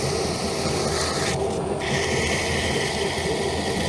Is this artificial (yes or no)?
no